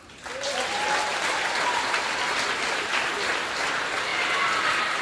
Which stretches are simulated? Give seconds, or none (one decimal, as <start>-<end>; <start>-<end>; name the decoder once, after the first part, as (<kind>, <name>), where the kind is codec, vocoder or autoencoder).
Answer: none

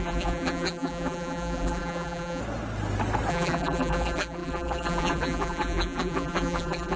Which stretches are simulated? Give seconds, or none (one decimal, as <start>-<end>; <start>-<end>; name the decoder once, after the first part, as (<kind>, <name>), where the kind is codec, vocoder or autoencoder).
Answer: 0.0-2.4 (vocoder, BigVGAN v2); 3.3-7.0

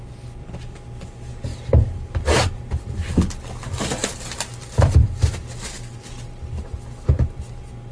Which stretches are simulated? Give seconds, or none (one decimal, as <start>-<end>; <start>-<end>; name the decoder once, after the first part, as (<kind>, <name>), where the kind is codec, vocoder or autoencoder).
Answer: 1.5-3.1 (vocoder, BigVGAN v2)